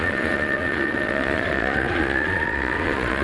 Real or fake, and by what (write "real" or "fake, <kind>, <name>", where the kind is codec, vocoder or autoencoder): fake, vocoder, Vocos